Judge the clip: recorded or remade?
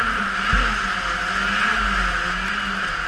recorded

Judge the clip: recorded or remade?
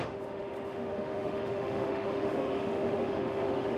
remade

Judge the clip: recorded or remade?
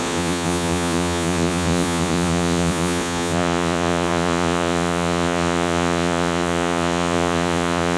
remade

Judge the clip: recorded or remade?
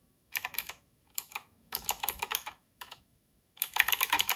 remade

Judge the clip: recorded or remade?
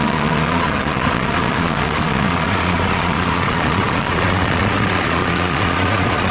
remade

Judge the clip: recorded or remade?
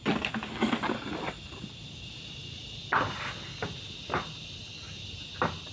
recorded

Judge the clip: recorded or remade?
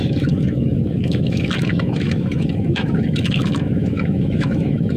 remade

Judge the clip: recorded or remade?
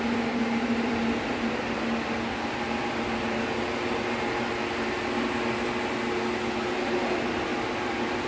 recorded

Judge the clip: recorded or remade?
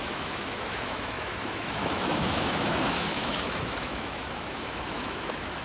remade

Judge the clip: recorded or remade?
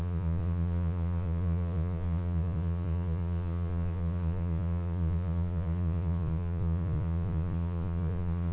remade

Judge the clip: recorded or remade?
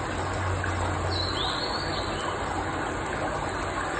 recorded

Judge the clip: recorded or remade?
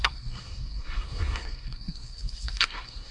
remade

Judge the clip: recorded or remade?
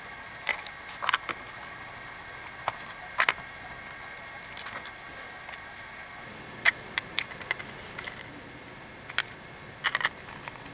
recorded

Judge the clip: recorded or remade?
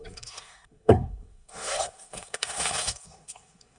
remade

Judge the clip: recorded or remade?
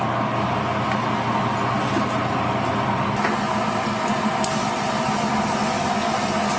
recorded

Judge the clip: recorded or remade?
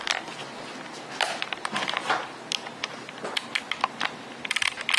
recorded